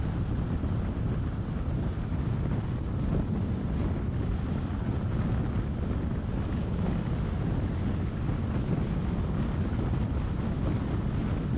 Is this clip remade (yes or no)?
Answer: no